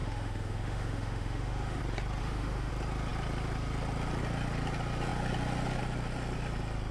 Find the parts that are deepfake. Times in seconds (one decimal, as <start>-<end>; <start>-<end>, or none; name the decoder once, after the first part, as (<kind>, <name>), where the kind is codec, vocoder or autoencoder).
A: 0.0-1.8 (autoencoder, DAC-VAE); 2.2-2.7